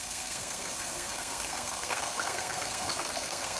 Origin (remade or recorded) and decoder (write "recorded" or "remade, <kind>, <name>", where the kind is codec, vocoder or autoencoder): remade, codec, SNAC